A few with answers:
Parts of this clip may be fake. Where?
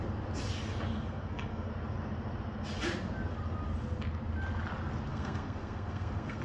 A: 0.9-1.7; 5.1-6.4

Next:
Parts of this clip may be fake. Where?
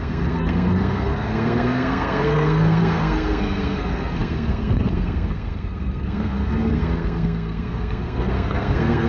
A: 0.0-9.1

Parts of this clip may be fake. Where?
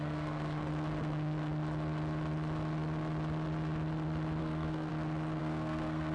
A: 0.0-0.7; 4.4-4.9; 5.4-6.1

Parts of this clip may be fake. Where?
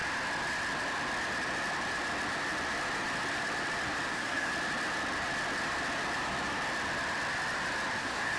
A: 4.1-4.5; 8.0-8.4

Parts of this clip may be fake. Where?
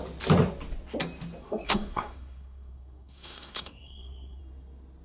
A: 1.4-4.4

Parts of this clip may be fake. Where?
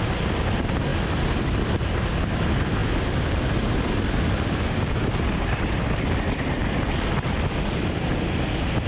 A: none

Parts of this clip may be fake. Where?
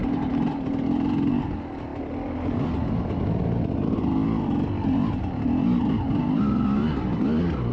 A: none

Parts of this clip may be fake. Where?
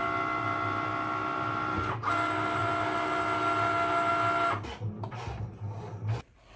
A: none